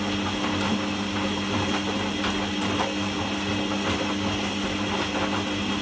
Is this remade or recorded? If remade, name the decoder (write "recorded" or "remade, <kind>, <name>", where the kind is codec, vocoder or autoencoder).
recorded